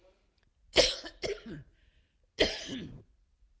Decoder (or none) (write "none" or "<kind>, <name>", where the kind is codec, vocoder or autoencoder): none